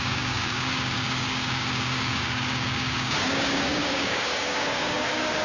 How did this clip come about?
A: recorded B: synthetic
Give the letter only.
B